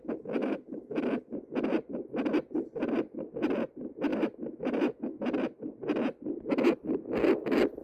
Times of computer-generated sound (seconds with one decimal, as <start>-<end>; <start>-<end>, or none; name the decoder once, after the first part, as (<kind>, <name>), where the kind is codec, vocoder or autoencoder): 0.4-1.0 (autoencoder, DAC-VAE); 4.1-5.2